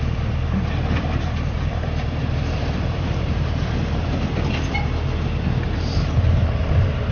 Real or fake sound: fake